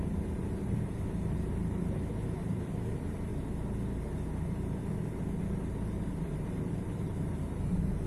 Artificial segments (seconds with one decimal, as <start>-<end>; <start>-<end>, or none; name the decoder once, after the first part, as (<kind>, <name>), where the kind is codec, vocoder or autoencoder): 0.0-3.3 (vocoder, BigVGAN v2); 5.4-8.1